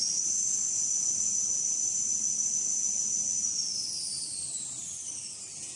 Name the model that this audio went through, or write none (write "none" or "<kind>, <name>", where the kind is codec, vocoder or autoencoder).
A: none